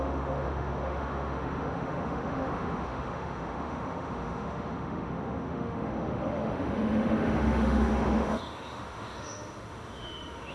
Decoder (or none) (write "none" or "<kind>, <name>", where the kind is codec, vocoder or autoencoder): autoencoder, DAC-VAE